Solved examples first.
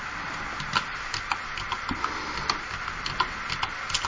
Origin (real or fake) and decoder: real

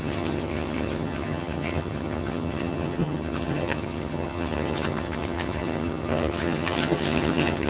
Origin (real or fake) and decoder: fake, vocoder, HiFi-GAN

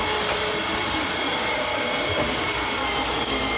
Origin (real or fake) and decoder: real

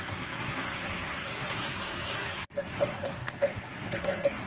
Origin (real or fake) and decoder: fake, codec, SNAC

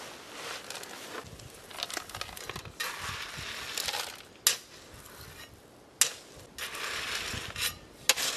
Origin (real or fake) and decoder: real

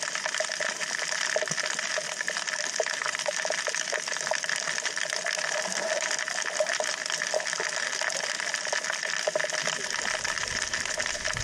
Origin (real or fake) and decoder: fake, vocoder, BigVGAN v2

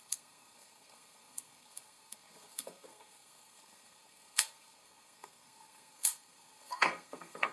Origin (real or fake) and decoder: fake, codec, SNAC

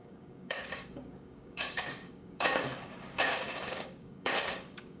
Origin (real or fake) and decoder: fake, codec, DAC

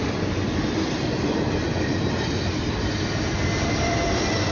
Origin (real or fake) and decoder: real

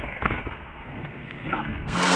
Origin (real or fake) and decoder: fake, codec, SNAC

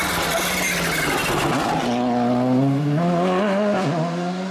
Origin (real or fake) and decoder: real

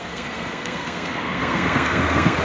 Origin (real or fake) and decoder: fake, codec, SNAC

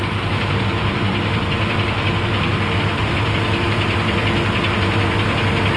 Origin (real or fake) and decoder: real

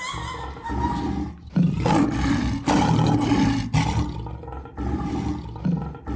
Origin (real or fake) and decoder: real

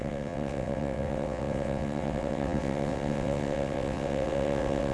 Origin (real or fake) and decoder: fake, vocoder, WaveNeXt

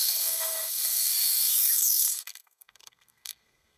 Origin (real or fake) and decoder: fake, codec, SNAC